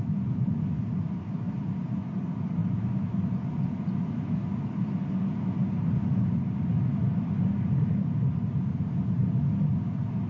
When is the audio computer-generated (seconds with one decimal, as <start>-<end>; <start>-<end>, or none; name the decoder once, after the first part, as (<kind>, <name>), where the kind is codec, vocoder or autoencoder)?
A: 2.6-3.2 (autoencoder, DAC-VAE)

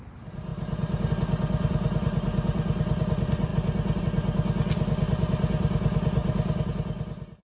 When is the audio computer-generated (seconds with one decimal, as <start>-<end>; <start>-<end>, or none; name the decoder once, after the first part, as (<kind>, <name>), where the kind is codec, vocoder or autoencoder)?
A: none

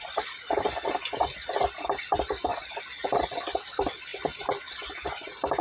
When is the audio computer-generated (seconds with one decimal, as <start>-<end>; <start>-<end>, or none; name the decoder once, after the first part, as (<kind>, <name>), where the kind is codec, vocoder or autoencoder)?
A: 0.0-1.0 (vocoder, BigVGAN v2); 1.8-2.5; 3.2-5.6

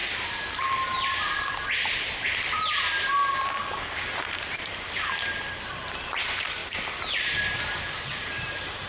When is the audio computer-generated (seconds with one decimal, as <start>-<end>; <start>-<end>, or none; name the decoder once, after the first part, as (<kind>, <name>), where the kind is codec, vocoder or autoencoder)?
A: 4.4-6.6 (vocoder, BigVGAN v2); 7.7-8.9

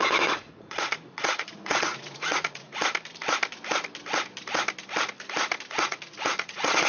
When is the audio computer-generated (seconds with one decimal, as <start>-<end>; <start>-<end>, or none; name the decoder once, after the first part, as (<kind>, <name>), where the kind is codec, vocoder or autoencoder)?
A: 0.0-2.7 (vocoder, Vocos); 5.7-6.9

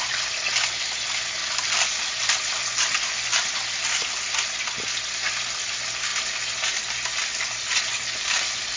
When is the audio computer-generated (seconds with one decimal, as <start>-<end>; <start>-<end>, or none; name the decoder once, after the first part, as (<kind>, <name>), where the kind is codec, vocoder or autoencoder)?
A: none

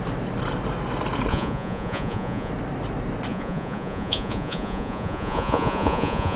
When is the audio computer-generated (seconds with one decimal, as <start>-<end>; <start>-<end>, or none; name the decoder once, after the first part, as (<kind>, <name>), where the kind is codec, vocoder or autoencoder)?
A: 1.3-2.5 (vocoder, Vocos); 3.3-6.4

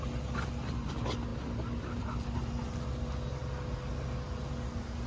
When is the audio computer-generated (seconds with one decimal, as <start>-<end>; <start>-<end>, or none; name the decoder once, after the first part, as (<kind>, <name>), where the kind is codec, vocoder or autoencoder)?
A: none